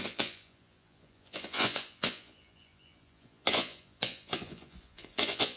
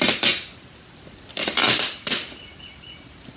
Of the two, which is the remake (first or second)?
first